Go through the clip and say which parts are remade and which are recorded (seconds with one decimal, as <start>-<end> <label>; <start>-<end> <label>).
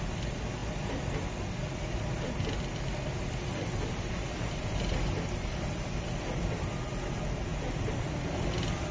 0.0-8.9 recorded